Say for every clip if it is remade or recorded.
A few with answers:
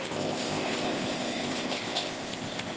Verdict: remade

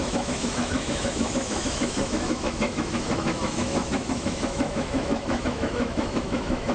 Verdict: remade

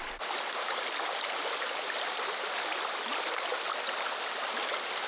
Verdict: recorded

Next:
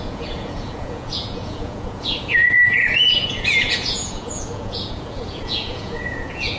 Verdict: remade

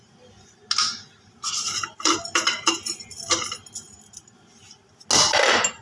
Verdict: recorded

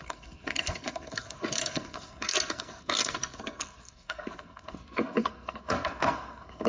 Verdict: remade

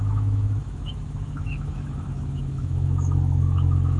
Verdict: remade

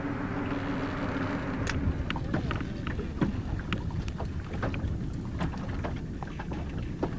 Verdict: recorded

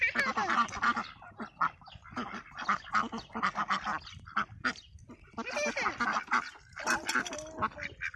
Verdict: recorded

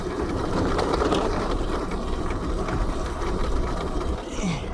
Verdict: remade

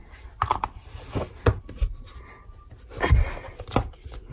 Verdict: recorded